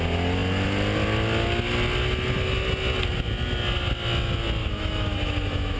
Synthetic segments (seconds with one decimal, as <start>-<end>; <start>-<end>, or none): 4.6-5.8

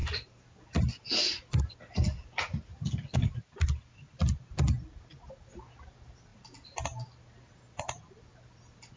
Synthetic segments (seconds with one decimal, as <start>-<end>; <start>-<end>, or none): none